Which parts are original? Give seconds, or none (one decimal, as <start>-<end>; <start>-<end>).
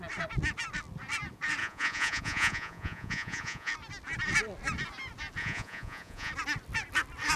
0.0-1.6; 3.7-5.4; 6.3-7.4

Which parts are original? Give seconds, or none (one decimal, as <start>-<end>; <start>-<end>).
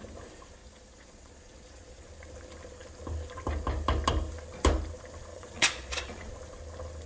0.0-0.6; 2.0-5.3; 6.3-7.1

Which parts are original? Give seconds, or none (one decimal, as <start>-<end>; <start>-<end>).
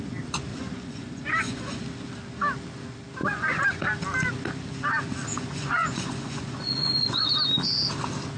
0.0-0.5; 1.8-3.2; 3.8-5.3; 7.3-8.4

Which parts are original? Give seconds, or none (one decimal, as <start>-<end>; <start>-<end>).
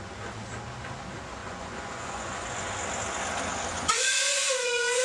0.0-1.4; 2.7-3.7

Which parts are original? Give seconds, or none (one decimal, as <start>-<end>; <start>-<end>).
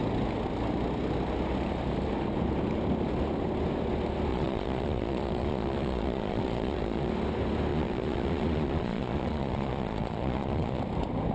0.0-4.3; 7.1-7.7; 10.8-11.3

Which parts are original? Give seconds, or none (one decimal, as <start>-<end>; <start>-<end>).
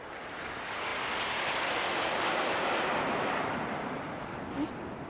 0.0-5.1